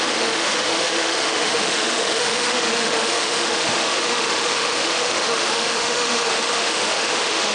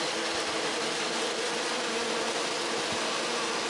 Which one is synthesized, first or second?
first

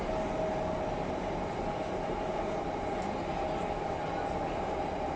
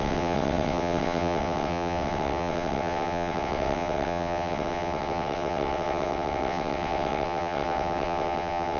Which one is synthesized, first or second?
second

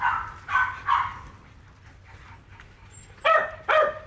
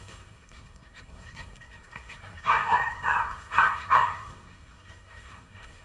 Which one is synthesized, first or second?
second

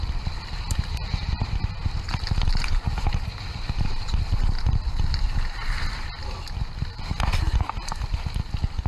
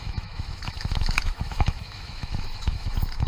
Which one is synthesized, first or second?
second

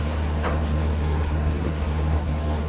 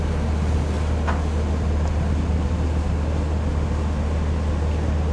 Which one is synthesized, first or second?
first